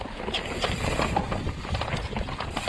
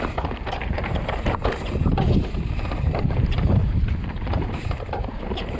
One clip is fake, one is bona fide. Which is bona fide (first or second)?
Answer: first